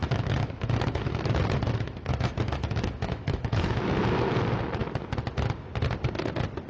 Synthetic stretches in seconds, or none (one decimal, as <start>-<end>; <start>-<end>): 0.0-4.0